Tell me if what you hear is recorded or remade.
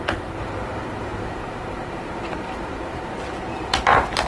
remade